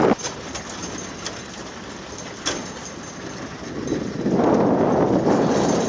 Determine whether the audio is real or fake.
real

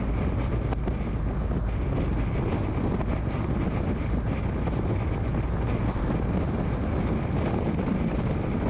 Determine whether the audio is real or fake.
real